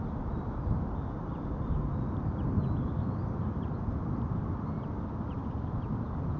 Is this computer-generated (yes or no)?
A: no